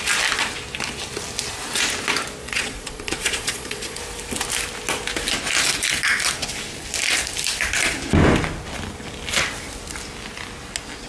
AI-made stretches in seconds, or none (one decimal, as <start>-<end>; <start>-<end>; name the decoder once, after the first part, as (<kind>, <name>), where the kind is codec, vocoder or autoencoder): 2.4-4.0 (vocoder, Vocos)